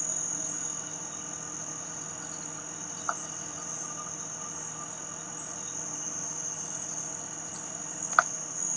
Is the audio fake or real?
real